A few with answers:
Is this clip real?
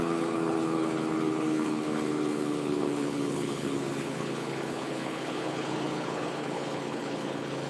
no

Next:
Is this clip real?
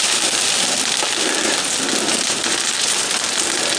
no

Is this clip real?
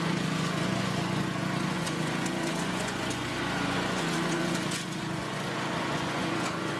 no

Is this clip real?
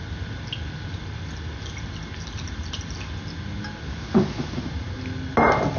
yes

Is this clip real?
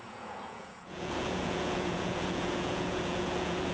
no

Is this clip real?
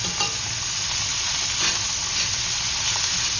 yes